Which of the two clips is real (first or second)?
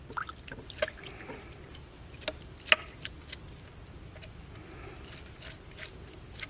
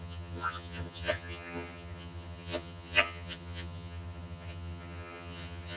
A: first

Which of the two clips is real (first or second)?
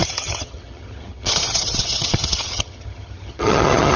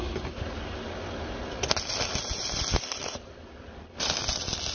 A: second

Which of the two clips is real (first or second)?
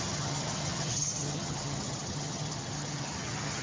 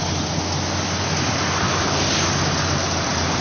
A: second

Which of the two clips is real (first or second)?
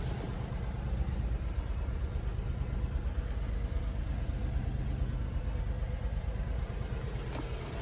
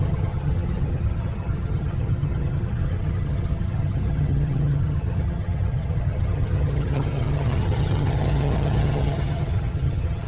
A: first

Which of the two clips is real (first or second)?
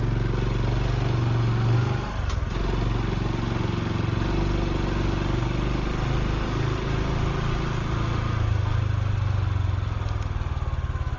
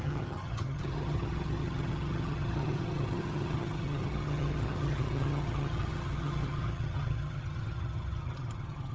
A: first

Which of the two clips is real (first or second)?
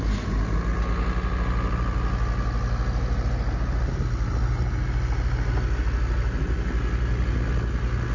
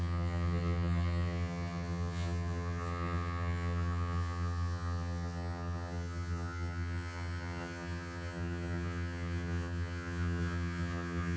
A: first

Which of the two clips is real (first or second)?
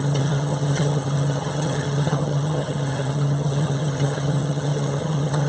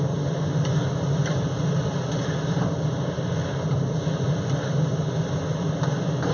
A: second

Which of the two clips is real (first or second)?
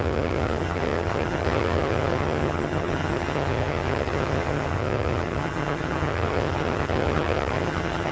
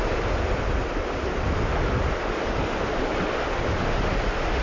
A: second